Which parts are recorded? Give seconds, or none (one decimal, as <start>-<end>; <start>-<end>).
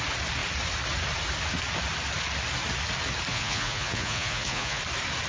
0.0-3.3; 4.8-5.3